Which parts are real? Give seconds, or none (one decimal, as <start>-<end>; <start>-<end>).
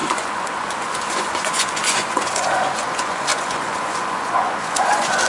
none